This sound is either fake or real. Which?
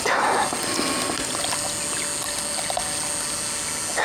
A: real